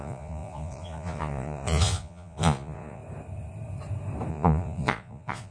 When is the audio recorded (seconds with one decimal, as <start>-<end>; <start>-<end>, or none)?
3.0-4.3